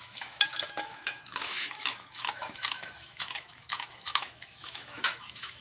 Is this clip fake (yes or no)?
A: yes